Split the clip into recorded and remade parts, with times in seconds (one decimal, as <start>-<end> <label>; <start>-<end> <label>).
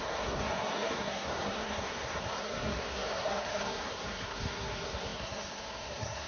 0.0-6.3 remade